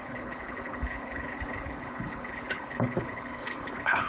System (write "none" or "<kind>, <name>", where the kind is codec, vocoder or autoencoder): codec, HILCodec